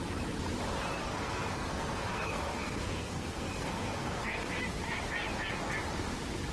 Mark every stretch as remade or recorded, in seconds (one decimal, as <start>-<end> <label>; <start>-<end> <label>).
0.0-1.0 recorded; 1.0-4.4 remade; 4.4-6.5 recorded